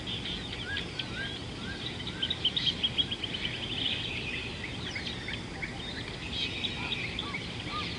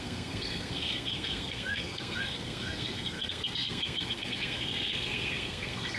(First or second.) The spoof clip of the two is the second